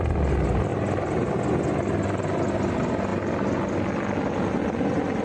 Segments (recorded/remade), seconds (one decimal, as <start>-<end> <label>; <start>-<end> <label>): 0.0-0.7 recorded; 0.7-1.3 remade; 1.3-5.2 recorded